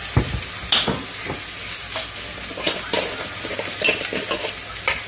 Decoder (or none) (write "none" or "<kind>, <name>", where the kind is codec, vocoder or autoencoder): none